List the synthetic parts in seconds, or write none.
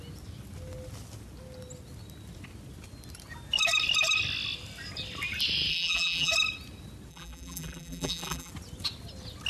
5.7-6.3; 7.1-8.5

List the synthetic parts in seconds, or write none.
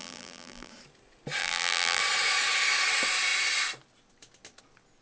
0.0-0.7; 1.4-2.0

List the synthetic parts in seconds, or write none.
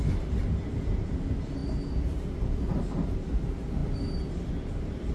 none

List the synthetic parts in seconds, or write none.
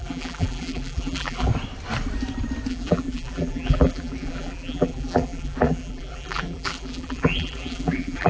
0.0-1.5; 2.7-8.3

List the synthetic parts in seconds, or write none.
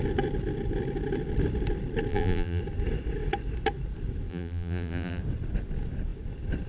2.1-2.6; 4.3-5.2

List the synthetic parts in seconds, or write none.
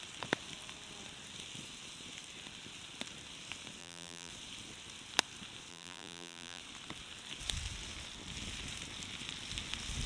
3.8-4.3; 5.7-6.6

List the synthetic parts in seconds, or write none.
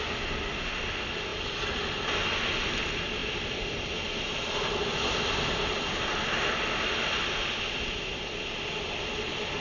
none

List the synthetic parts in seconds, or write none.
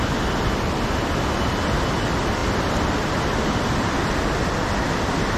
2.4-4.0